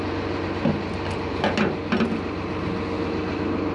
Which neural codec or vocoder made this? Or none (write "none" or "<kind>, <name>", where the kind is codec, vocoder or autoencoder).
none